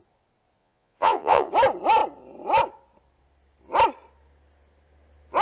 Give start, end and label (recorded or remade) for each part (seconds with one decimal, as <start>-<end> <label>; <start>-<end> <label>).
0.0-0.6 recorded; 0.6-1.5 remade; 1.5-5.4 recorded